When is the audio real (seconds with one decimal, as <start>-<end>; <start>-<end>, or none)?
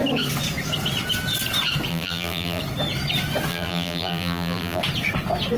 0.0-1.9; 2.6-3.5; 4.8-5.6